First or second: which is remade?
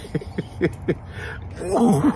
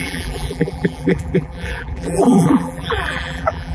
second